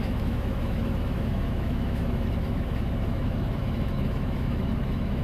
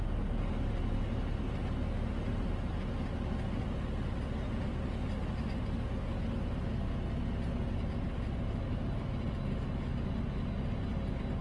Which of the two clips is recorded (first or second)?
second